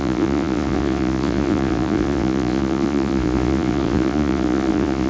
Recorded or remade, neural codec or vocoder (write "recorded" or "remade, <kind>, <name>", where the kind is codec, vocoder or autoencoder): remade, vocoder, Vocos